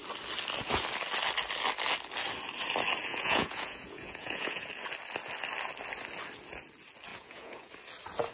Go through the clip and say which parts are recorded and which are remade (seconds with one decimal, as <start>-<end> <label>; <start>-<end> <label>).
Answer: 0.0-3.1 recorded; 3.1-4.7 remade; 4.7-7.1 recorded; 7.1-7.7 remade; 7.7-8.3 recorded